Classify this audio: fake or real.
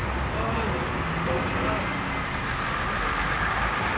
real